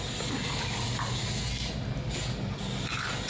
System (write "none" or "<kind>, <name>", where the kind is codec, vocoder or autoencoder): none